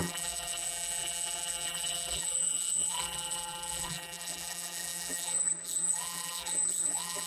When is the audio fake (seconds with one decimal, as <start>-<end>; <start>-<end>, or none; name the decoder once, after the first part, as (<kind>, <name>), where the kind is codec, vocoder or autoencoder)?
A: 0.0-7.3 (vocoder, BigVGAN v2)

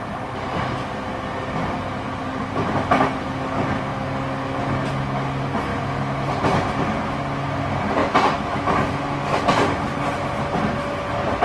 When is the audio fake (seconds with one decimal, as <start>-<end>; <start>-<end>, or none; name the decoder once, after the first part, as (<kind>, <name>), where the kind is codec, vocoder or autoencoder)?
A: none

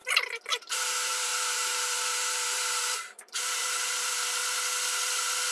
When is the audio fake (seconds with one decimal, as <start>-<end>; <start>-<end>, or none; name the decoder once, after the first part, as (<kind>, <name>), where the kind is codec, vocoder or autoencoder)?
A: 0.5-4.4 (vocoder, BigVGAN v2)

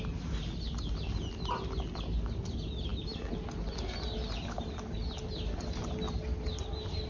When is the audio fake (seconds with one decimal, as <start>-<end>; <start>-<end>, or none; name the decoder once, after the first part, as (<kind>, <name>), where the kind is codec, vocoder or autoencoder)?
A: none

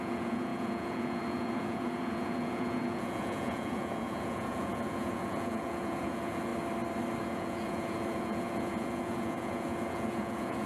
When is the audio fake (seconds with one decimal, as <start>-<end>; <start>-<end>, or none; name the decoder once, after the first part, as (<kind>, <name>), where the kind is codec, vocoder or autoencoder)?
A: 0.0-6.5 (vocoder, Vocos); 7.2-10.7

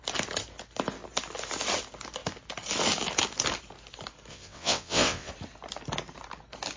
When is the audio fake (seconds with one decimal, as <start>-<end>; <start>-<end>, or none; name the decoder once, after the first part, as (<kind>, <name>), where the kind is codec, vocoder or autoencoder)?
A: 4.3-5.3 (vocoder, WaveNeXt)

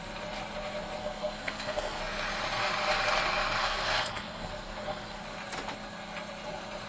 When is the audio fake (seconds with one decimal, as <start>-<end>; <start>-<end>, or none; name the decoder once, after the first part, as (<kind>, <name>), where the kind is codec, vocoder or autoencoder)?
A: 1.0-2.0 (codec, SNAC); 3.6-5.2

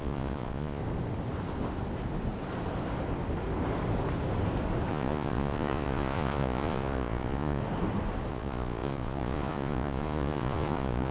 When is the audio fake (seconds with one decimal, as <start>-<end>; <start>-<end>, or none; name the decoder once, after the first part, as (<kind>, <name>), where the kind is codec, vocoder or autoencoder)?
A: 0.0-0.8 (vocoder, Vocos); 4.9-7.6; 8.3-11.1